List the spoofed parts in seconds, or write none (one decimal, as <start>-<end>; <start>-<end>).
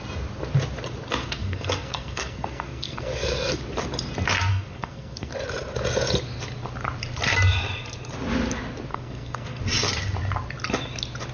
1.2-3.6; 4.5-5.3; 8.9-9.6